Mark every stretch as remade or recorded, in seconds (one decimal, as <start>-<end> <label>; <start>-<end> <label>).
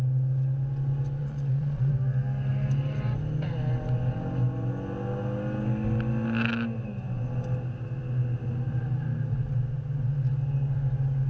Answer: 0.0-1.2 recorded; 1.2-1.9 remade; 1.9-11.3 recorded